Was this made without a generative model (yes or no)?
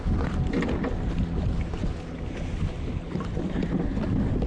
yes